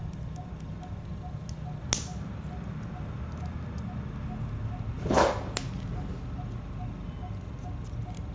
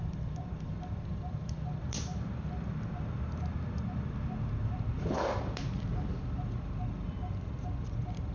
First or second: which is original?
first